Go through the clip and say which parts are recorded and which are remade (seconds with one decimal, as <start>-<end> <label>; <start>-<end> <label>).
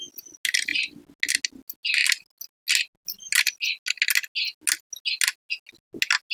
0.0-6.3 recorded